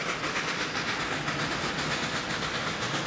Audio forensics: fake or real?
real